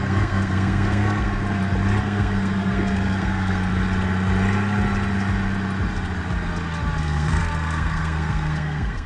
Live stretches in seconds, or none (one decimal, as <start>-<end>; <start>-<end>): 1.4-2.0; 3.7-7.0